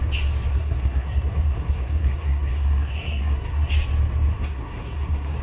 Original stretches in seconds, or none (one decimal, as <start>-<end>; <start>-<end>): 0.0-0.5; 3.7-4.3